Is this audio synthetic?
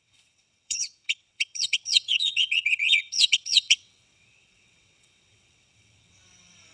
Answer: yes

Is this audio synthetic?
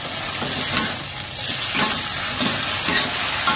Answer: no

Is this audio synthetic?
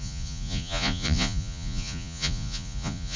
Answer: yes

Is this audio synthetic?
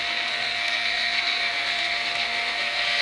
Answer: yes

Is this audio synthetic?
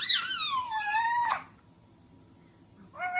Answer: no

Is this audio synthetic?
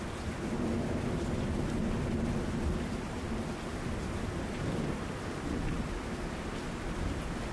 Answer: no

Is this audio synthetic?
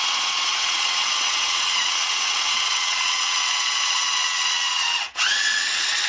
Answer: yes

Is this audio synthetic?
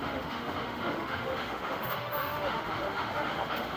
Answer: yes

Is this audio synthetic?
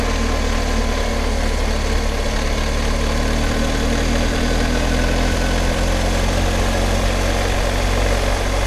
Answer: no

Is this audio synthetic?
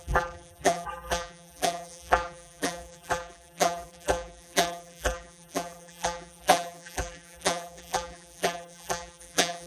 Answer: yes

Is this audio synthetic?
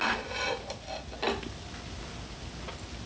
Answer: no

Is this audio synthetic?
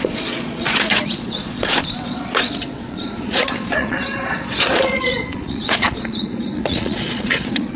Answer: yes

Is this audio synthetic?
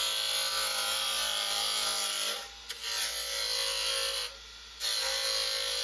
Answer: no